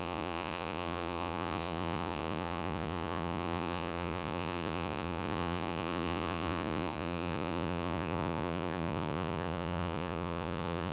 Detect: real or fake fake